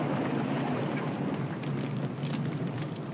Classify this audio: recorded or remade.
recorded